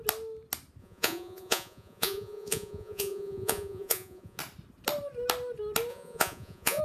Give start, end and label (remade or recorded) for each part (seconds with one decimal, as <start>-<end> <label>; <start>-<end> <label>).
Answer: 0.0-0.8 recorded; 0.8-4.4 remade; 4.4-5.9 recorded; 5.9-6.8 remade